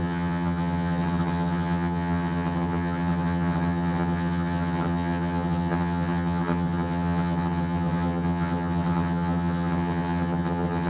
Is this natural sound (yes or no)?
no